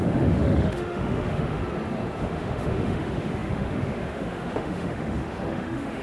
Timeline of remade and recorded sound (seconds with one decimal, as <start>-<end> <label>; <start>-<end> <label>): 0.0-1.6 remade; 1.6-2.2 recorded; 2.2-6.0 remade